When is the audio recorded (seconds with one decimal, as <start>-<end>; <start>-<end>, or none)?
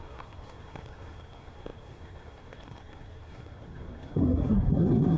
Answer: none